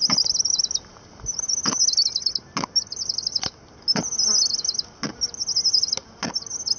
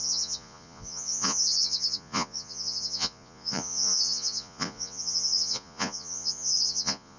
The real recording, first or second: first